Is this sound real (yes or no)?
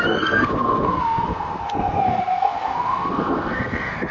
no